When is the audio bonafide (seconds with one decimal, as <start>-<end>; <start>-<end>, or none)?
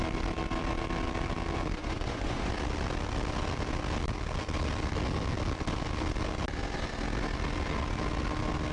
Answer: 0.0-1.8; 2.5-8.7